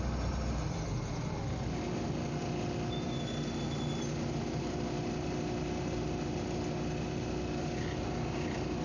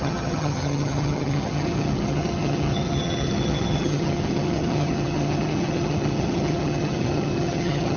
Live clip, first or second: first